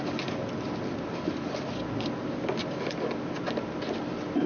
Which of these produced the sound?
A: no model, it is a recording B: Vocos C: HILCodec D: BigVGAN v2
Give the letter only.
A